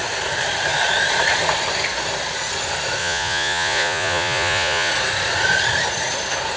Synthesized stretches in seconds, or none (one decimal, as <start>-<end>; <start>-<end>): 3.0-4.9